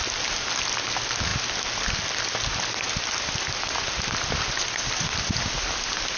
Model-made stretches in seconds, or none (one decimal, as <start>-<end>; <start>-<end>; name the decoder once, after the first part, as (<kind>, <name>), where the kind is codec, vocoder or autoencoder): none